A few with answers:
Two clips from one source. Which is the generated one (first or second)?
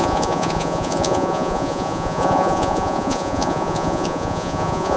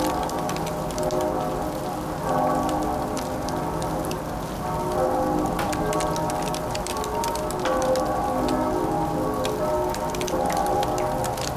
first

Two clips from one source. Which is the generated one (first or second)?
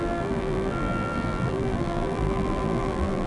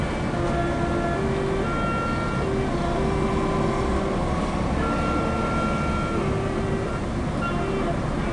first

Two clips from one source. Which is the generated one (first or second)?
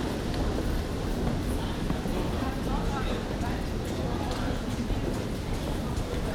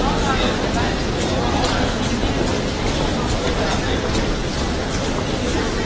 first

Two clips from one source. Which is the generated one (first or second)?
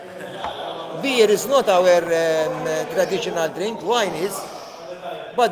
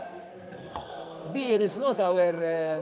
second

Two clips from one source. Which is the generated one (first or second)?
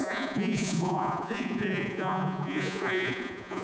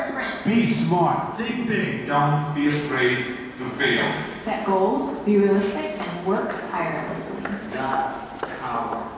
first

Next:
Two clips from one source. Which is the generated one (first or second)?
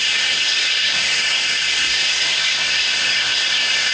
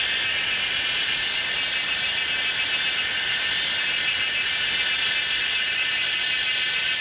first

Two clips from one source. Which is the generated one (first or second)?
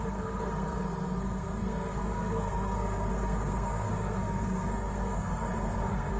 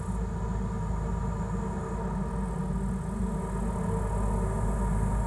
first